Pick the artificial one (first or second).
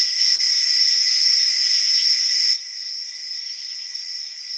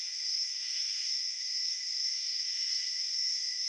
second